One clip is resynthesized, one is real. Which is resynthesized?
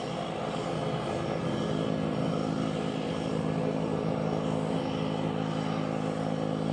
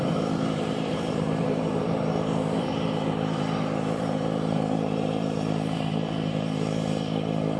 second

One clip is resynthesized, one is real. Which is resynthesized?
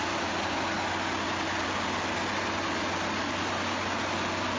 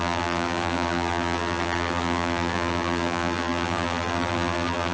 second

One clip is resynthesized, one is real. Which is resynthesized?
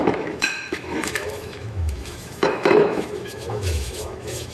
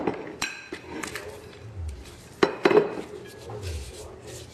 first